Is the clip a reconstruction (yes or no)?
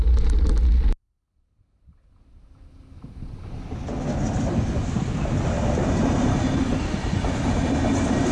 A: no